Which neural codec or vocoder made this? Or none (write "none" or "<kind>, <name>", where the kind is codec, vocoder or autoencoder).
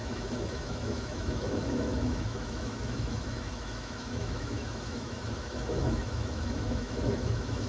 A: autoencoder, DAC-VAE